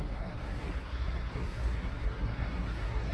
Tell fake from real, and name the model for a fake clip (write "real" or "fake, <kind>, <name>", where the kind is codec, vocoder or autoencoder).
fake, codec, SNAC